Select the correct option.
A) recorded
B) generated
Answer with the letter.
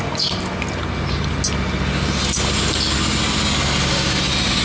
A